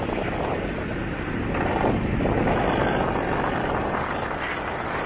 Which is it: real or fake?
real